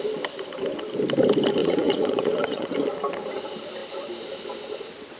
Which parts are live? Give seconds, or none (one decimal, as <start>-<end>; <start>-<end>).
0.0-1.6; 2.7-5.2